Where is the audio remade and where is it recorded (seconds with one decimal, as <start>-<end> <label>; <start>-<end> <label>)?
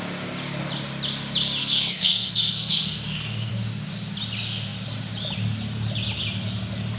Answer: 0.0-1.6 recorded; 1.6-3.5 remade; 3.5-7.0 recorded